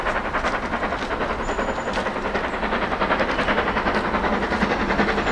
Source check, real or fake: real